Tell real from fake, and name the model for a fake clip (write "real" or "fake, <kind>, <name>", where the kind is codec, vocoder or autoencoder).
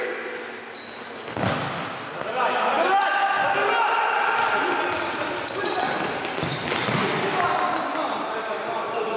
real